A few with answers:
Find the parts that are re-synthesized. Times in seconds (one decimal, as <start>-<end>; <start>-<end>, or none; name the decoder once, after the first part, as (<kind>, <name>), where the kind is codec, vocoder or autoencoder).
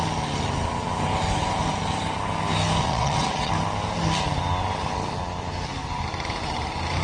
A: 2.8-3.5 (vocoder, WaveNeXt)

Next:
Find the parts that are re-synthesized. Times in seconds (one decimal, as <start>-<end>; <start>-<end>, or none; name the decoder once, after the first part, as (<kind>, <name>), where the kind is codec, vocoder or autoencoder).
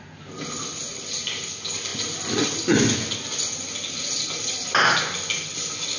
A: none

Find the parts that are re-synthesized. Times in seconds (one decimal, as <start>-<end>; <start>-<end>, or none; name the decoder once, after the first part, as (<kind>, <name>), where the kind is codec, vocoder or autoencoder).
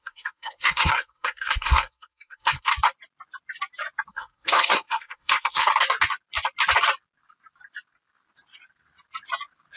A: 0.0-2.7 (codec, SNAC); 4.1-5.7